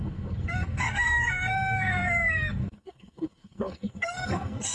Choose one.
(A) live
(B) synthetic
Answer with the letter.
B